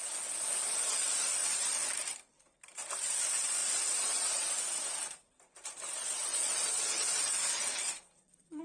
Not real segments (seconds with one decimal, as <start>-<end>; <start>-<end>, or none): 6.3-8.6